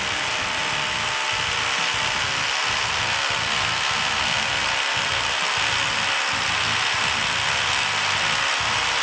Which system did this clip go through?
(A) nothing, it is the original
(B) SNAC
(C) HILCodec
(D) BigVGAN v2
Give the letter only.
A